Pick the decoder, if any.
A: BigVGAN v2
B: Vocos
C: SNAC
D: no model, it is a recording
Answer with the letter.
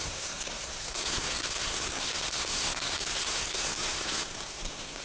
C